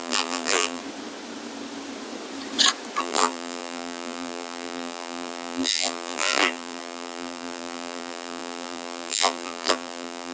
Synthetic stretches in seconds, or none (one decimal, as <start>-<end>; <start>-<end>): 0.0-0.8; 3.0-10.3